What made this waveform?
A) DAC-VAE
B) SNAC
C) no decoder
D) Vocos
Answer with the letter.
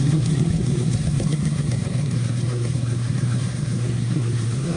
B